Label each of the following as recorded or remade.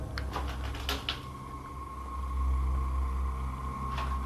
recorded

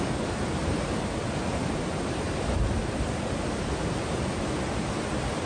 recorded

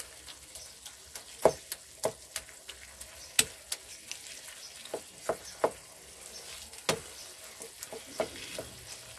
recorded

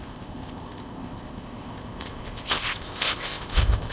remade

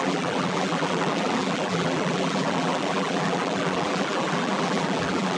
remade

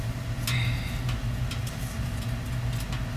recorded